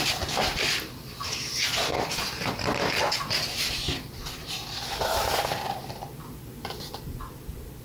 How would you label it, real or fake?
real